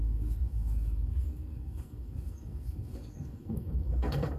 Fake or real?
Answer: fake